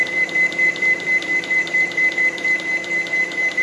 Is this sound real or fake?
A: fake